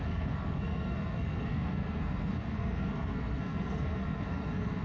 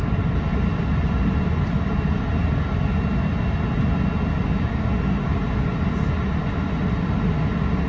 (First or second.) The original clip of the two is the second